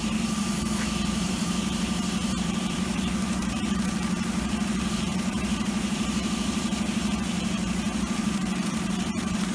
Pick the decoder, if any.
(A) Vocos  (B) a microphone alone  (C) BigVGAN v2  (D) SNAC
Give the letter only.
C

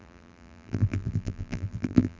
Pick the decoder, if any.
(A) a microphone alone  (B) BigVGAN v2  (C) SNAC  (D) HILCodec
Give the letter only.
B